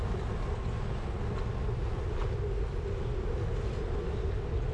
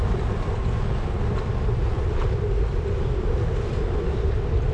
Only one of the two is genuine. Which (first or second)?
first